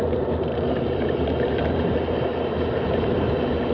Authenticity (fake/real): fake